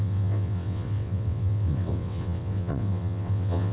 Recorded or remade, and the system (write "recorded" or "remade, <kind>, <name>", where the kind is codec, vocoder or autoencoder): remade, vocoder, WaveNeXt